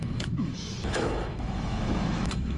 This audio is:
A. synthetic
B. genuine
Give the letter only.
A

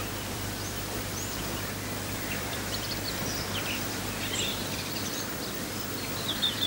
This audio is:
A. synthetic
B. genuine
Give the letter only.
A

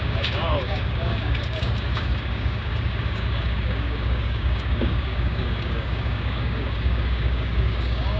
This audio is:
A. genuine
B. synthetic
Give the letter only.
B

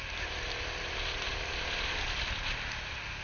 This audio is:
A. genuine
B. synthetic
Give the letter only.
A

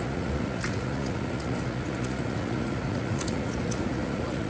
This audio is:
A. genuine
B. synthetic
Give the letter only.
B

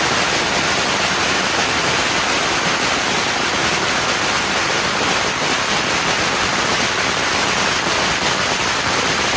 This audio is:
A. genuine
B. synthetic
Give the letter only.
A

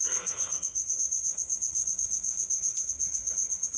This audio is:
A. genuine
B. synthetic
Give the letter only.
B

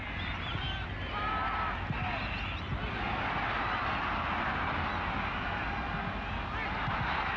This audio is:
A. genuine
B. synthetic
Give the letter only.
A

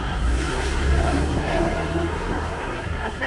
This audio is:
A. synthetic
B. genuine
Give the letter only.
A